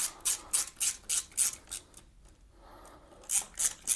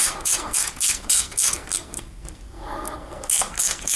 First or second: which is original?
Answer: first